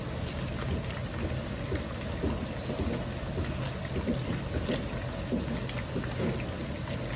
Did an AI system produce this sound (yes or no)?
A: no